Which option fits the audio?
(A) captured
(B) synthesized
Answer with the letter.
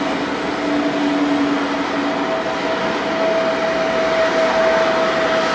A